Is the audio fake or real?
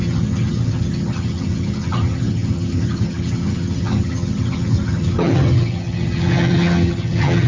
fake